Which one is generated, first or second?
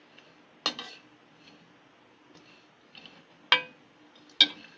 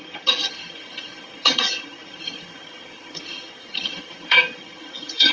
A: second